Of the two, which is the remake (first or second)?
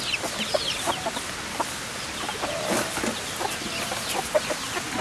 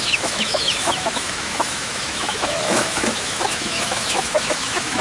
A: second